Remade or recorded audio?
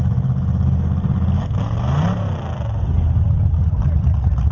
recorded